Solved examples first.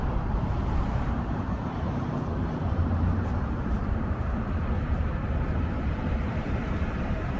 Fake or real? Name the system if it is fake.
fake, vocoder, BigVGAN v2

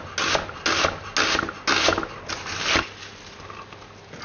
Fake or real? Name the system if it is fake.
real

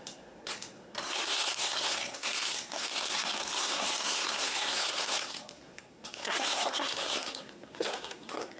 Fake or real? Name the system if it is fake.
fake, codec, SNAC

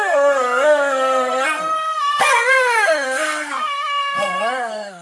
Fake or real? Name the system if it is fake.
fake, codec, SNAC